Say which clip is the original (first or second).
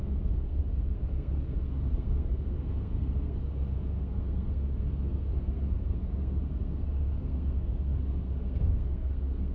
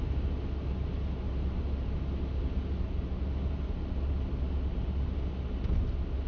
second